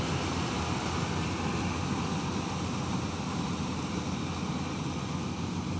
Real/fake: real